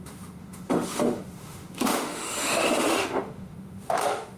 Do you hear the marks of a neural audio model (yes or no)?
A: yes